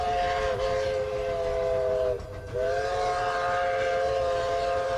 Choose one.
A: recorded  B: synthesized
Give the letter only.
A